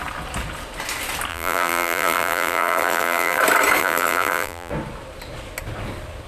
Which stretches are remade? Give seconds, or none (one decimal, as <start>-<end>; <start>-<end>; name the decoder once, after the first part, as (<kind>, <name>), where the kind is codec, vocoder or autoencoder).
1.3-3.4 (vocoder, BigVGAN v2); 3.8-4.7